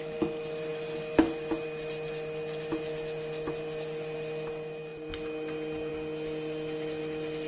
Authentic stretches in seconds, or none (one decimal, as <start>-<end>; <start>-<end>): 0.0-7.5